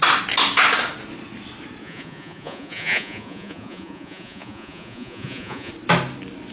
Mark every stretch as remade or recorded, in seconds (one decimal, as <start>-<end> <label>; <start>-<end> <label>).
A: 0.0-1.8 recorded; 1.8-5.7 remade; 5.7-6.5 recorded